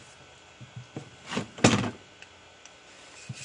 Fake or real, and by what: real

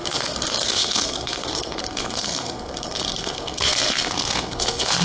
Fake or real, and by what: fake, codec, SNAC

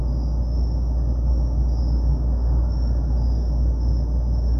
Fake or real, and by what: real